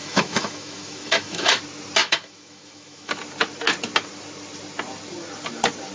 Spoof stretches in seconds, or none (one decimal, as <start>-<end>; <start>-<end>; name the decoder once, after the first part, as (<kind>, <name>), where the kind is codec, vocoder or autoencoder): 0.0-1.6 (autoencoder, DAC-VAE); 2.0-3.1